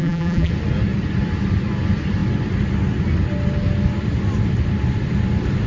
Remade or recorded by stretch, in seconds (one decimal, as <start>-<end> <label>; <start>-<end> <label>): 0.0-0.5 remade; 0.5-5.7 recorded